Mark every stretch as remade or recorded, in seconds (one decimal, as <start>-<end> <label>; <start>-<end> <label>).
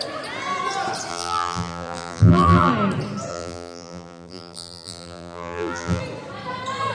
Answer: 0.0-1.1 recorded; 1.1-2.7 remade; 2.7-3.3 recorded; 3.3-6.0 remade; 6.0-6.9 recorded